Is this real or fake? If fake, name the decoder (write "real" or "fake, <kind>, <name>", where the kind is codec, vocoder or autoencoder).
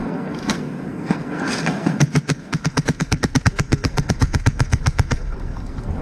fake, codec, SNAC